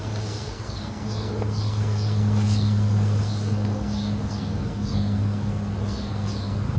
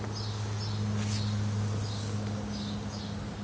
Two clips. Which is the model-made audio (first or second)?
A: first